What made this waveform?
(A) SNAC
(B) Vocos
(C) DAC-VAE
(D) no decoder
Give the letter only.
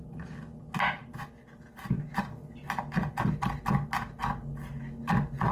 D